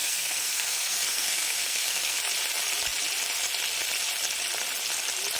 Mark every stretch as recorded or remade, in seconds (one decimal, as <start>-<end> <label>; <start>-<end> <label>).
0.0-2.2 remade; 2.2-5.4 recorded